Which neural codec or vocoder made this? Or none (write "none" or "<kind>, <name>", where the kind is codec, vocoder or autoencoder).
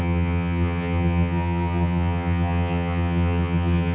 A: vocoder, HiFi-GAN